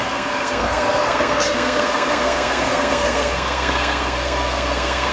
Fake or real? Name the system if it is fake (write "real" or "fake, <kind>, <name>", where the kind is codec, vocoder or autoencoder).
fake, codec, SNAC